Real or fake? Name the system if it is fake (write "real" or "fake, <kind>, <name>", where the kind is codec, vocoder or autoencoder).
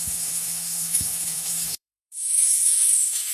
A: fake, autoencoder, DAC-VAE